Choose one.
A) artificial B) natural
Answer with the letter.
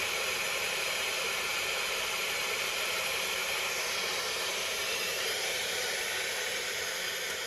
A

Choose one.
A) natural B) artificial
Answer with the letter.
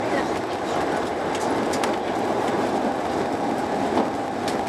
A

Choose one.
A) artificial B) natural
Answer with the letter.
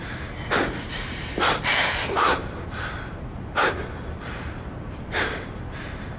A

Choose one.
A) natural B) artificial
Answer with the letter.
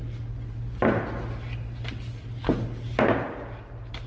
A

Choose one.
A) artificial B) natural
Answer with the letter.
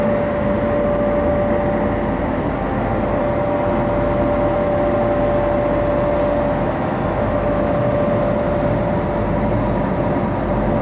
B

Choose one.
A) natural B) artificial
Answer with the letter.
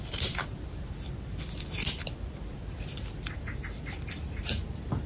B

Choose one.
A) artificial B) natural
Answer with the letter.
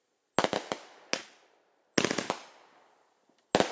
B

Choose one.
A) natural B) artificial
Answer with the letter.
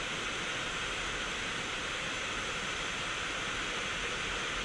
B